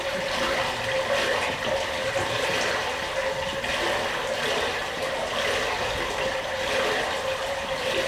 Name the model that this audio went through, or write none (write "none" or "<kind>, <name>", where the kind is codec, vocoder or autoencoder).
none